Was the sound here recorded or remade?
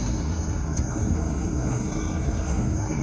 remade